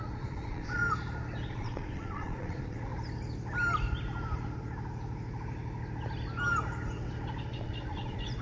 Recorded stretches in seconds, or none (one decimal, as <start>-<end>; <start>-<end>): 0.8-1.5; 2.9-7.5